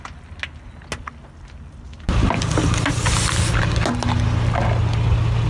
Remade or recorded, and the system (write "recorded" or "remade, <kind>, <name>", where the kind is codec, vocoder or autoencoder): recorded